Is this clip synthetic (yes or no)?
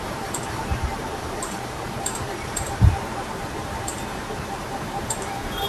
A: yes